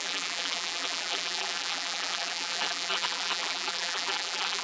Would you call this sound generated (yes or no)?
yes